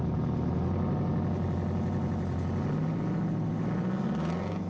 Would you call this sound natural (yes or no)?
yes